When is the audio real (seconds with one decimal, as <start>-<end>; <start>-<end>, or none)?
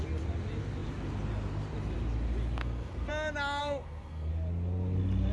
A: 0.0-2.6; 3.1-3.6; 4.3-5.3